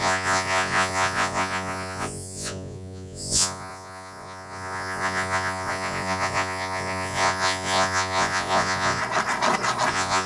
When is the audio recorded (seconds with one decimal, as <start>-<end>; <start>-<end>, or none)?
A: 9.0-9.9